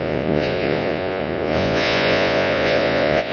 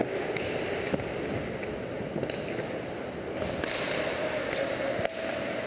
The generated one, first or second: first